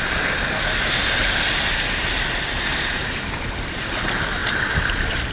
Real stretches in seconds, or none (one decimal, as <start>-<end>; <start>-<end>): 0.0-5.3